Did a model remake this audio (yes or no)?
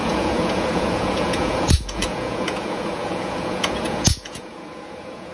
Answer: yes